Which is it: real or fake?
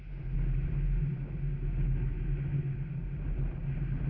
real